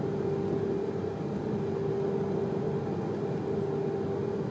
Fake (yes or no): no